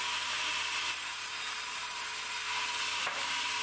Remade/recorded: recorded